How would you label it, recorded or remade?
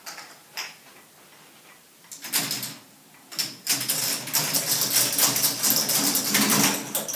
recorded